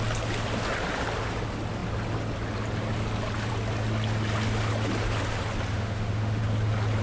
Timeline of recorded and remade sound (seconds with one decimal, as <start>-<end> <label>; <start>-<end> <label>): 0.0-5.7 recorded; 5.7-6.4 remade; 6.4-7.0 recorded